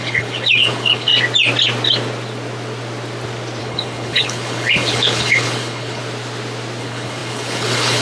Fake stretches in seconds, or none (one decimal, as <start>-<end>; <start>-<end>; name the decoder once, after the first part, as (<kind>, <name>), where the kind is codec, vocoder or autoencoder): 0.0-1.1 (codec, HILCodec); 3.6-6.0; 6.8-8.0